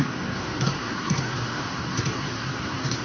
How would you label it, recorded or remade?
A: remade